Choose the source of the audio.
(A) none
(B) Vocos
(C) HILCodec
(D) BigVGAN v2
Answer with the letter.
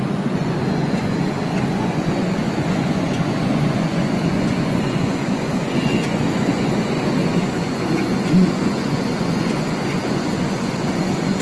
B